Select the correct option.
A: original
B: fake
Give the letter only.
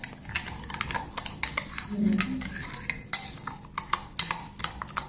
A